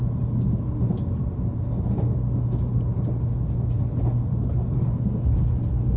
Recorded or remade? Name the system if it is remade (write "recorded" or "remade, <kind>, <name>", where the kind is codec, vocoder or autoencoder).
recorded